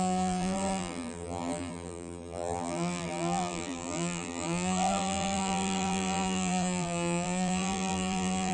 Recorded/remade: remade